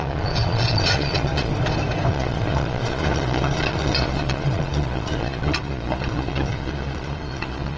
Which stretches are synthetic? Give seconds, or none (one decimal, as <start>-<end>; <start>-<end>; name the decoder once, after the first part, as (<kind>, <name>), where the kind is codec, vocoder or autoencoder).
0.0-1.5 (vocoder, Vocos); 2.1-7.8